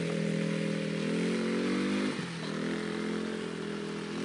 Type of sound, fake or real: real